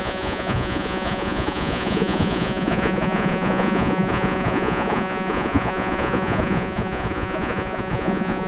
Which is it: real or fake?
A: fake